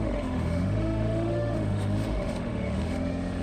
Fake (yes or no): yes